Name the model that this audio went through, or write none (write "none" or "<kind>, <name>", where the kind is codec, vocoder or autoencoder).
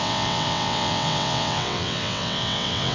vocoder, WaveNeXt